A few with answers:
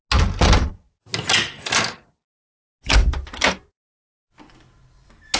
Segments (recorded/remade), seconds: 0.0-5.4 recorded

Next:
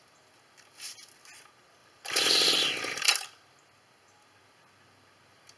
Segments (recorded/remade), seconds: 0.0-1.8 recorded; 1.8-2.5 remade; 2.5-5.6 recorded

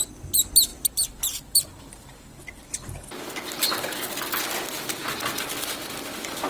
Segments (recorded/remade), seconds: 0.0-0.7 recorded; 0.7-2.3 remade; 2.3-6.5 recorded

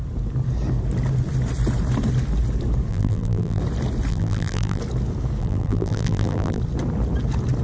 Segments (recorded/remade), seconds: 0.0-2.9 recorded; 2.9-3.6 remade; 3.6-4.1 recorded; 4.1-4.8 remade; 4.8-5.4 recorded; 5.4-6.6 remade; 6.6-7.6 recorded